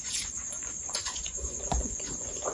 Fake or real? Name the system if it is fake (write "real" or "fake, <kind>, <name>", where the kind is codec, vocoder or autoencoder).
fake, vocoder, Vocos